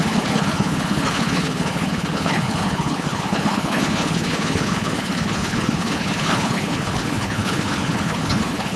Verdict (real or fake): fake